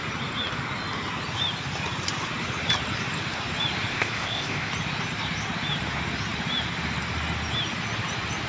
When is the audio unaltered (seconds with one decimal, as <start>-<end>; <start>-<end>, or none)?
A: 0.0-3.9; 4.7-8.5